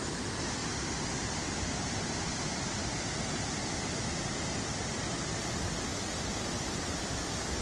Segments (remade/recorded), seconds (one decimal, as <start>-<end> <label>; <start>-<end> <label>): 0.0-7.6 recorded